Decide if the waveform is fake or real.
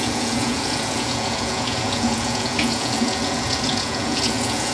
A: fake